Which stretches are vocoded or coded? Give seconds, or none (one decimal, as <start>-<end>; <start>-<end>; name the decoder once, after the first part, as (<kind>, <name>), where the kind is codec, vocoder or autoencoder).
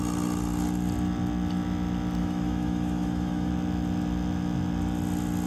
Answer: 2.2-3.5 (autoencoder, DAC-VAE)